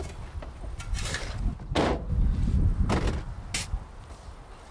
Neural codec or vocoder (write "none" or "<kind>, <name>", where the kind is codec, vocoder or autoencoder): none